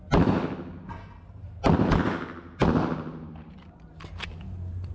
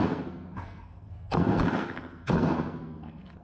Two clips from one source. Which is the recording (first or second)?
first